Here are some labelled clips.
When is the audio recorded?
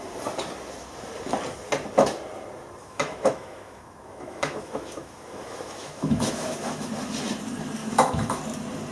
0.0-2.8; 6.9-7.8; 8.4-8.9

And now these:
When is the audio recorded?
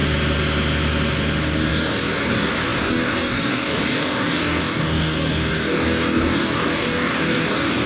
0.0-1.7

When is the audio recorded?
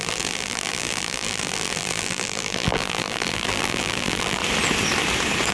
4.4-5.5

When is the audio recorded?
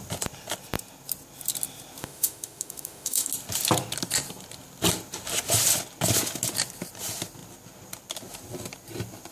0.0-2.0; 3.3-9.3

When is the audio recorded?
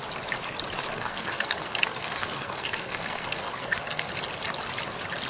0.0-0.9; 4.1-5.3